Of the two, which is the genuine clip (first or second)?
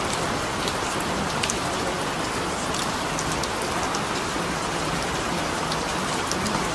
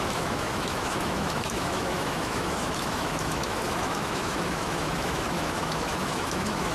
first